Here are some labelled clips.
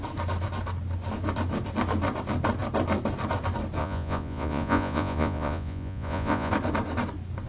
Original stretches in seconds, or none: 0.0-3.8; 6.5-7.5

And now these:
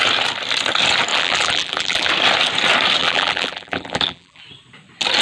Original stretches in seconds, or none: 0.0-1.1; 2.1-3.0; 4.4-5.2

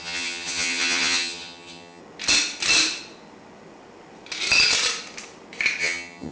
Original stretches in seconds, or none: 2.0-5.8

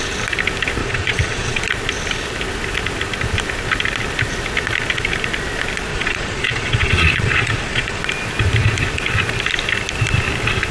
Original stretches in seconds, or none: 0.0-0.8; 1.6-5.9; 8.0-10.7

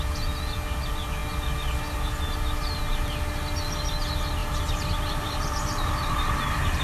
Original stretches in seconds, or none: 0.0-4.4; 5.4-6.8

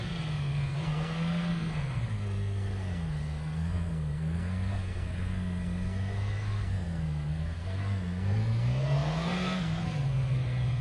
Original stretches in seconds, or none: none

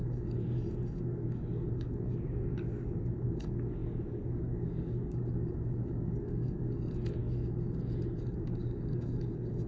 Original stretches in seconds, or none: 7.2-8.2

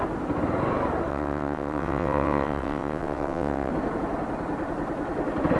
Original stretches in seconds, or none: 0.0-1.1; 3.7-5.6